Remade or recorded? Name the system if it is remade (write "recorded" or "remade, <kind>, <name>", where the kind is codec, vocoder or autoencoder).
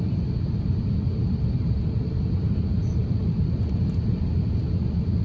remade, vocoder, BigVGAN v2